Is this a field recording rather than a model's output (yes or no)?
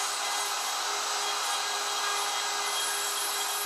yes